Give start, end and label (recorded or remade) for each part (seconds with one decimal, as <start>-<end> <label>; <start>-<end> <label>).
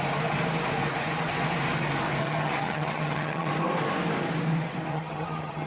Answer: 0.0-2.2 recorded; 2.2-3.5 remade; 3.5-4.9 recorded; 4.9-5.7 remade